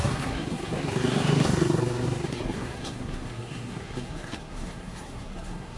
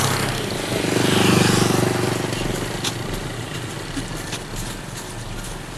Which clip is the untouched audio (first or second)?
second